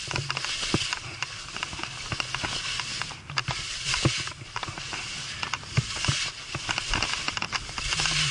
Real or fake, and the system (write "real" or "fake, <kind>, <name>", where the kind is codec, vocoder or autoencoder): real